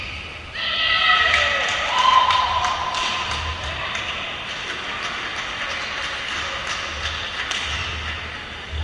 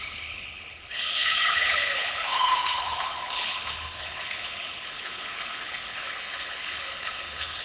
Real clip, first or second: first